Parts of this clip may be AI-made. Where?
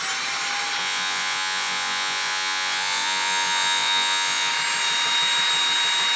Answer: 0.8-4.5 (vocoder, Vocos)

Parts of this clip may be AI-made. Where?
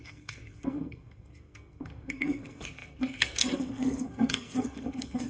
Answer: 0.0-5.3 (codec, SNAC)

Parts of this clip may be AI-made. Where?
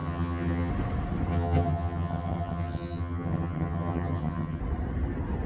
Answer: 0.0-0.7 (vocoder, HiFi-GAN); 1.3-4.6